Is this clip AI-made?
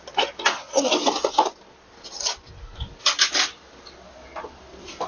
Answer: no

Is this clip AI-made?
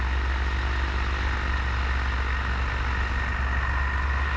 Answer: no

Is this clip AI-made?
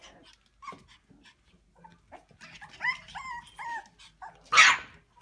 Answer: no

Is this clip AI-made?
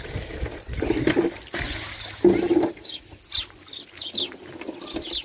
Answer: no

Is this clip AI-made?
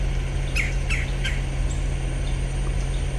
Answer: no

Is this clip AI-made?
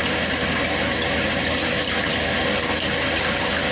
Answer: no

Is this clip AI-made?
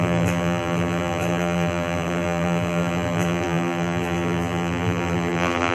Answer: yes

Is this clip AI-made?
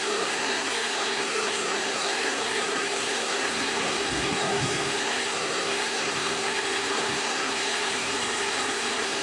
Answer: yes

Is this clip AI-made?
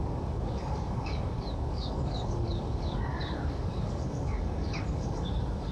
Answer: yes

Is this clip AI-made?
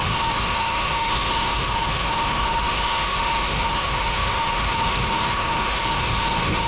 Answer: yes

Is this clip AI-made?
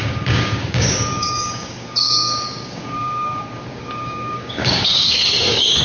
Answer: yes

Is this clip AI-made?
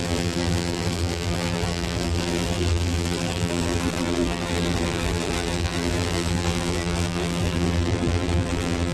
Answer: yes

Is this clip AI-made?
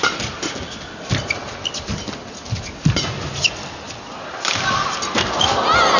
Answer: no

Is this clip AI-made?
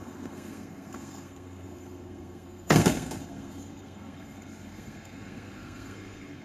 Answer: yes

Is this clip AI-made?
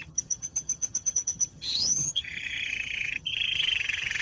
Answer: yes